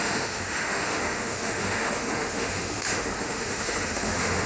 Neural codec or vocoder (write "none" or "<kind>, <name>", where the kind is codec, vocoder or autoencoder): autoencoder, DAC-VAE